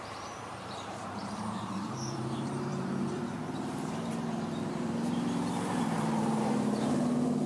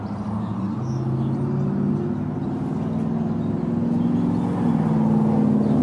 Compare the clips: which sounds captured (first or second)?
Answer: second